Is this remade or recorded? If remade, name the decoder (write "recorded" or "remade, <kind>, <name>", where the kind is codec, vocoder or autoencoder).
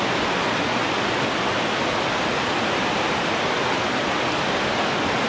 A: recorded